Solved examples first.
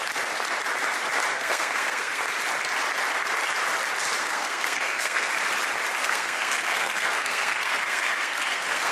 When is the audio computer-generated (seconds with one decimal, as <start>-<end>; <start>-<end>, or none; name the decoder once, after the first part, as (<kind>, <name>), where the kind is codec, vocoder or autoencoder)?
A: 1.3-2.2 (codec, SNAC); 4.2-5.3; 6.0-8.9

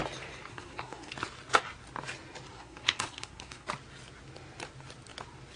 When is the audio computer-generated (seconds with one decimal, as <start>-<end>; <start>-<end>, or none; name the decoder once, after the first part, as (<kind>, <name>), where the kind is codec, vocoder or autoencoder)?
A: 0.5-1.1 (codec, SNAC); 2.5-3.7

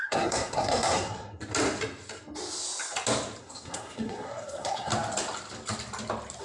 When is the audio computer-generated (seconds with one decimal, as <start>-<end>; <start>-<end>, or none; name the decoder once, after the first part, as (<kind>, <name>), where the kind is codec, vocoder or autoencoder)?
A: 0.0-1.4 (codec, SNAC); 3.4-4.9

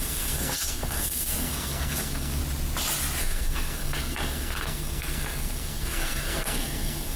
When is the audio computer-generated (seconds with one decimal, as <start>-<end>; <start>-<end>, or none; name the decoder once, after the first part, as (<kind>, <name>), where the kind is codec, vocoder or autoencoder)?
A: 0.0-2.4 (codec, SNAC); 3.2-7.2